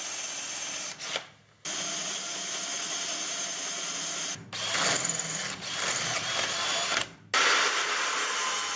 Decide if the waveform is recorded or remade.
recorded